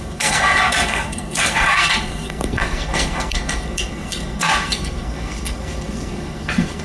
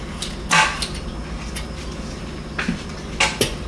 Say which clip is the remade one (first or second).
first